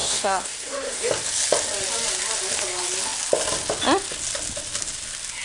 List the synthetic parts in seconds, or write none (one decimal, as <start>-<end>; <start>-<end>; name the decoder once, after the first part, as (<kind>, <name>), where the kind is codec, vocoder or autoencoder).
0.0-1.1 (codec, SNAC)